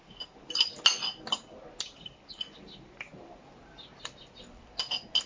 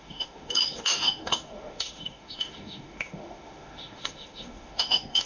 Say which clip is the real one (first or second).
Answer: first